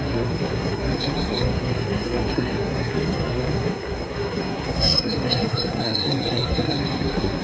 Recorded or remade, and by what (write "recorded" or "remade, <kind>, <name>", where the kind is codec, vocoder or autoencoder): remade, codec, SNAC